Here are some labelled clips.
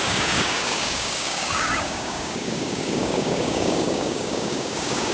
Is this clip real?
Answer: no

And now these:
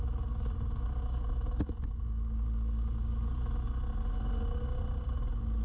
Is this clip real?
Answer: yes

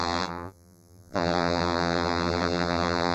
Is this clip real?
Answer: no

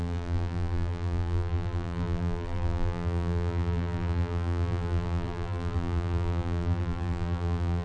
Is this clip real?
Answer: no